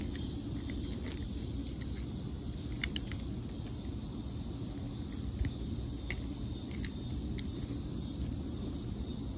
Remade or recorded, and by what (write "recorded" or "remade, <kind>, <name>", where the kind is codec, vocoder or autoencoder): recorded